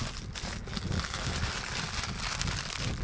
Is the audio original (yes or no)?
yes